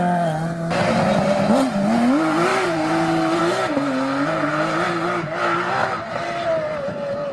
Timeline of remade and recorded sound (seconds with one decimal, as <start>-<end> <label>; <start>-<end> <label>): 0.0-2.5 recorded; 2.5-3.4 remade; 3.4-5.8 recorded; 5.8-6.6 remade; 6.6-7.3 recorded